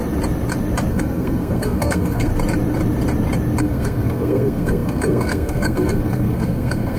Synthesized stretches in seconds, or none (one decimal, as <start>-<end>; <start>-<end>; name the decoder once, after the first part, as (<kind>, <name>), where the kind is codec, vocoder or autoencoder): 0.9-2.3 (codec, SNAC); 3.6-7.0

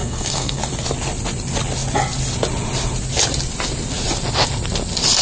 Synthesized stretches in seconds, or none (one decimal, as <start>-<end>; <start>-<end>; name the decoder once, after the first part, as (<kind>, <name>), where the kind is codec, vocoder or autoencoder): 0.0-0.6 (codec, SNAC)

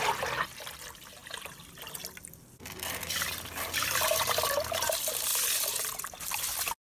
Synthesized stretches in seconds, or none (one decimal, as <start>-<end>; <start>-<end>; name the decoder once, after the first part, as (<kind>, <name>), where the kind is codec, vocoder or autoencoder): none

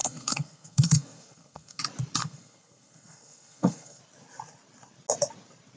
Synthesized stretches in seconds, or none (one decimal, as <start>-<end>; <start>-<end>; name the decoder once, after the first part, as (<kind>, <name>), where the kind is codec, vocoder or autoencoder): 0.0-1.8 (codec, SNAC); 2.2-4.0

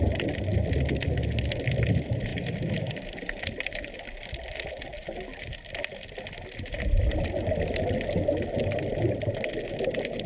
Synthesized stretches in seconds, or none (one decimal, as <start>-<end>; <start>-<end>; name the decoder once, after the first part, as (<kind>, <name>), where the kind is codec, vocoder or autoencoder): none

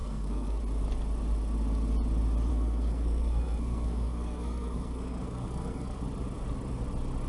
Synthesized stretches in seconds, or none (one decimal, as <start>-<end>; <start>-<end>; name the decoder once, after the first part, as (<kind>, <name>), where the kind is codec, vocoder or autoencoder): 0.0-0.6 (codec, SNAC); 2.5-6.0

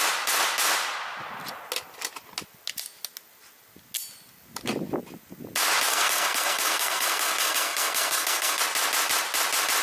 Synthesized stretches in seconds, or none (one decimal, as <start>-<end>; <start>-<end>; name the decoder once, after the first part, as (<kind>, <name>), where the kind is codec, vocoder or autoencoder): 5.9-8.6 (codec, SNAC)

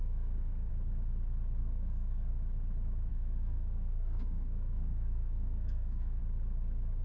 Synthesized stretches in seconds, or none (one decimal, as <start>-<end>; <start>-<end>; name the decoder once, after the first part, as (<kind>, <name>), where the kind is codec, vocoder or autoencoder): 0.0-0.7 (codec, SNAC); 1.6-2.3; 3.1-6.2